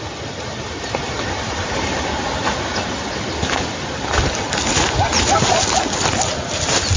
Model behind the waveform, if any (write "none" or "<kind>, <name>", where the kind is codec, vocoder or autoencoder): none